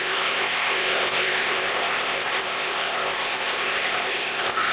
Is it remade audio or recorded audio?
remade